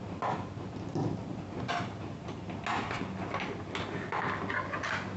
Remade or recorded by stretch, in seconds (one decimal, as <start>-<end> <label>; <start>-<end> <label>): 0.0-5.2 recorded